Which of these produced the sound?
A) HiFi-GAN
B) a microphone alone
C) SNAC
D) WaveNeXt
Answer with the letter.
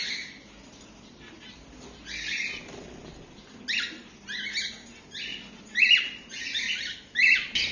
B